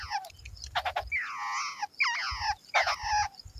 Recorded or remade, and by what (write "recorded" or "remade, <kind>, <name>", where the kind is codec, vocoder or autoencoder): recorded